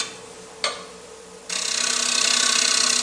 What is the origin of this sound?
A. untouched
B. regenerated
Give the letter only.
A